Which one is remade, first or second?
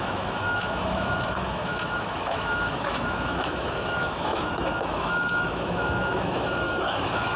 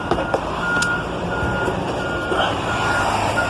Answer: first